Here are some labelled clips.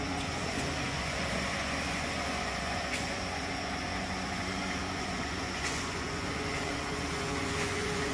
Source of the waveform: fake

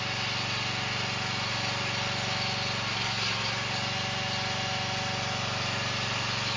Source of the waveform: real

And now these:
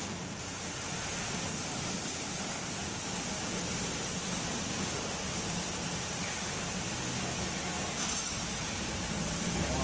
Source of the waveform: real